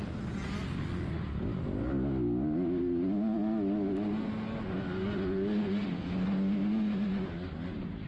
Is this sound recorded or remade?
recorded